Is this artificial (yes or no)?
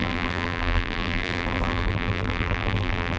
yes